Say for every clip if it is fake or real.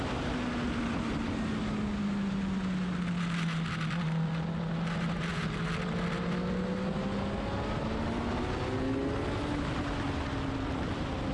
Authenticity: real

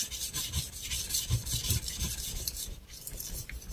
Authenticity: real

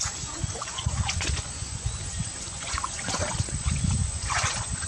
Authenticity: fake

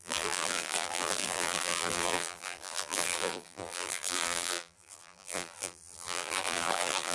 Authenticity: fake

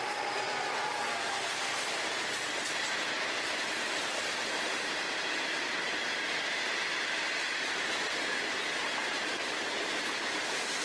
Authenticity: fake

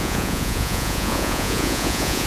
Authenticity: fake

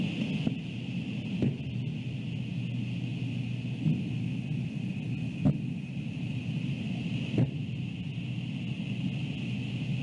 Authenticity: real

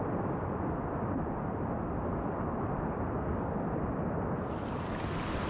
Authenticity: real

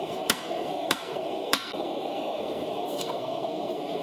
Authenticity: fake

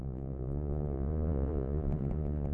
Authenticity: fake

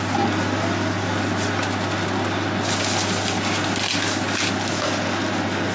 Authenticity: real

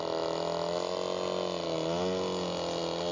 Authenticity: real